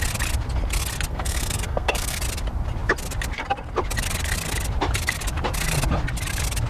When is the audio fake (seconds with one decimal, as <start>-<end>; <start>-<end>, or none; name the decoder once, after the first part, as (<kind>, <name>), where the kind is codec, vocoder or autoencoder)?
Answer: 1.1-2.2 (codec, SNAC)